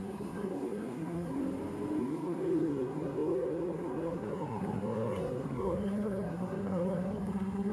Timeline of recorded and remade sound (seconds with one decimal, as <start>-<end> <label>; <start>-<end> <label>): 0.0-1.4 remade; 1.4-2.0 recorded; 2.0-7.7 remade